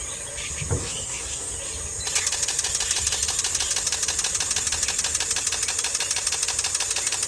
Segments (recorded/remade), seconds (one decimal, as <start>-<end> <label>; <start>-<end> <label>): 0.0-0.8 recorded; 0.8-1.5 remade; 1.5-7.3 recorded